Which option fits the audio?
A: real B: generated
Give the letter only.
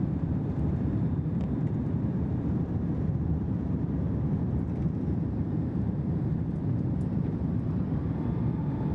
B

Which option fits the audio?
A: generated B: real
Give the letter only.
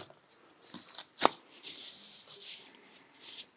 A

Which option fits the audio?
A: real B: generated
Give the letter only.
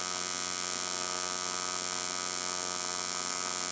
A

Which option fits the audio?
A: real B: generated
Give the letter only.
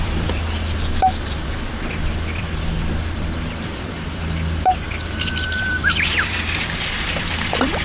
B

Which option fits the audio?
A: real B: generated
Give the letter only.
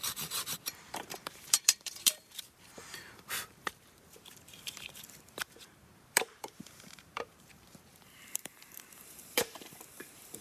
B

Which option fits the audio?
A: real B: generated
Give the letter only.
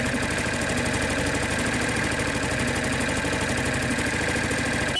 A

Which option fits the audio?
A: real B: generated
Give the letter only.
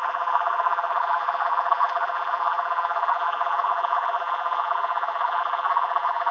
B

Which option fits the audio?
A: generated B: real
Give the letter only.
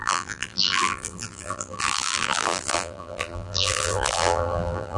A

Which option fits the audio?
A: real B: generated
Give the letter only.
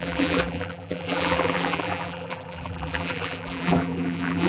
B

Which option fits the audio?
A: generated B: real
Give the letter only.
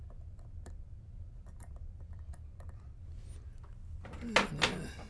B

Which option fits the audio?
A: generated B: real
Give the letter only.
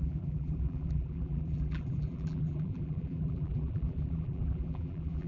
A